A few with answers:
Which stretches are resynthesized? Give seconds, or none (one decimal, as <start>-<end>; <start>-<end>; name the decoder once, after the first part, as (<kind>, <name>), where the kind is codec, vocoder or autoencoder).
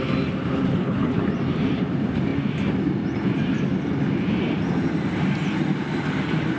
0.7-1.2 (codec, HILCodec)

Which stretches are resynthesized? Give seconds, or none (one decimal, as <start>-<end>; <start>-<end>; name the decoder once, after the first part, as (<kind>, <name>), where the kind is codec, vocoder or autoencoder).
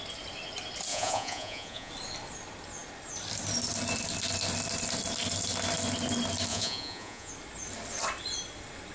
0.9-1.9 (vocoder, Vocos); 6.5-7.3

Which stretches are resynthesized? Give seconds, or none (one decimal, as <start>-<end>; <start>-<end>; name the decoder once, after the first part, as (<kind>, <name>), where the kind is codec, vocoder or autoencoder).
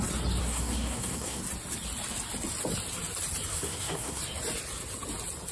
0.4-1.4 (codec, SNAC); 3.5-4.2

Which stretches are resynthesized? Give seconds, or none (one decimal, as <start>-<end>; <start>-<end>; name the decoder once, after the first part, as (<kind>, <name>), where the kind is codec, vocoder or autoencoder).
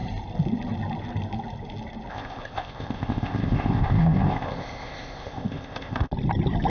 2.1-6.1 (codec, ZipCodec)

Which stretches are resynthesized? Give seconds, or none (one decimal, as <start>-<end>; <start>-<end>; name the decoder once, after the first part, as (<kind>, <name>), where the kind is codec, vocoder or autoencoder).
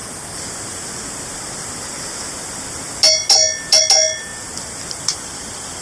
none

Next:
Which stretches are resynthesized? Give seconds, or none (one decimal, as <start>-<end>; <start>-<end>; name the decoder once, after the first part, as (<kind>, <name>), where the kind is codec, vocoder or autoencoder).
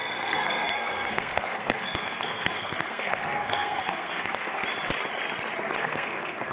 0.0-4.6 (codec, SNAC); 5.8-6.5